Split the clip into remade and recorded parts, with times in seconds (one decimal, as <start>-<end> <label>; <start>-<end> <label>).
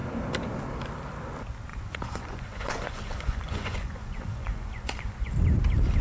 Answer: 0.0-1.7 recorded; 1.7-5.3 remade; 5.3-6.0 recorded